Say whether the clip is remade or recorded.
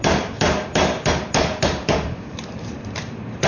remade